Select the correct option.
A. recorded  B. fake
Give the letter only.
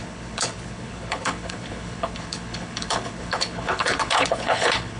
B